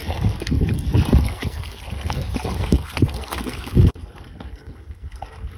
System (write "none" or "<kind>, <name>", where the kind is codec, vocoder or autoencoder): codec, SNAC